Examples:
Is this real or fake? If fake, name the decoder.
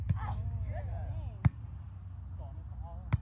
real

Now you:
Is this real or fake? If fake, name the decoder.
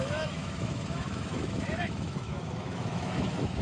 fake, autoencoder, DAC-VAE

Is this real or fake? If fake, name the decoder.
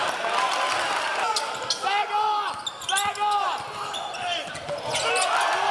real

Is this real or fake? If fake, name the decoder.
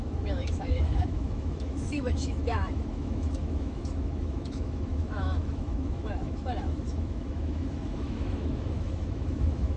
fake, autoencoder, DAC-VAE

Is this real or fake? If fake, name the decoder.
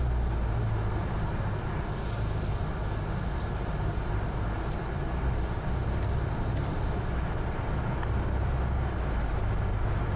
real